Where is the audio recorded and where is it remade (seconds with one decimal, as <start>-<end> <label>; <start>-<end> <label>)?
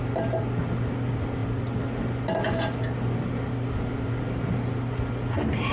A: 0.0-5.7 recorded